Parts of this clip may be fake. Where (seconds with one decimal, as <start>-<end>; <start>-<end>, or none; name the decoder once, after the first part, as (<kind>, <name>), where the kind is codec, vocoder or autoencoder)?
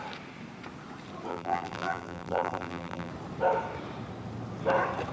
1.3-3.1 (vocoder, BigVGAN v2)